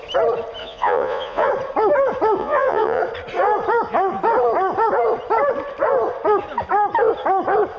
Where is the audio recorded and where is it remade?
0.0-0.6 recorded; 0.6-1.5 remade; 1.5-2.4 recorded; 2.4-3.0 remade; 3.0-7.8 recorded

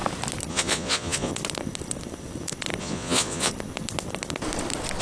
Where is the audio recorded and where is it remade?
0.0-0.5 recorded; 0.5-1.3 remade; 1.3-2.8 recorded; 2.8-3.5 remade; 3.5-5.0 recorded

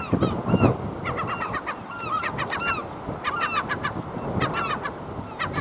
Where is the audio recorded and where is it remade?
0.0-5.6 recorded

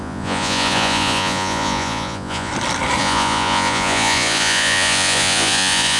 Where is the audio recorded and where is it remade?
0.0-2.5 remade; 2.5-3.0 recorded; 3.0-6.0 remade

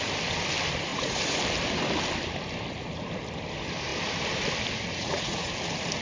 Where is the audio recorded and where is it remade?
0.0-0.9 recorded; 0.9-1.4 remade; 1.4-4.9 recorded; 4.9-5.5 remade; 5.5-6.0 recorded